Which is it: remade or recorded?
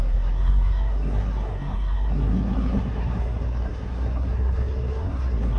remade